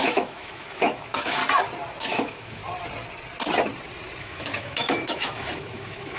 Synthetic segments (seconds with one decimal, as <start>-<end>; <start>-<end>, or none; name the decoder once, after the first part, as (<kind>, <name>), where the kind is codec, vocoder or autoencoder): 0.0-1.4 (autoencoder, DAC-VAE); 2.0-2.6; 4.2-6.2